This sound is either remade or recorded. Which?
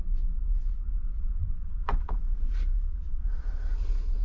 remade